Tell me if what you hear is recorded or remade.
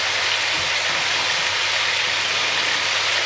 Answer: recorded